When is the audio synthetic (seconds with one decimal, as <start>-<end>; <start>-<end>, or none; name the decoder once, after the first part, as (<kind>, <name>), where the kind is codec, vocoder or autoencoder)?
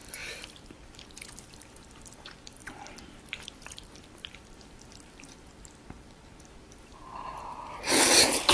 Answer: 0.0-8.5 (vocoder, BigVGAN v2)